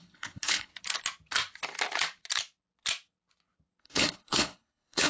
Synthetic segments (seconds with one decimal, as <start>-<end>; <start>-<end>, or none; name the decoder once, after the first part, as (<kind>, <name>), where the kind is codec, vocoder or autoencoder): 0.0-0.7 (codec, HILCodec); 3.8-5.1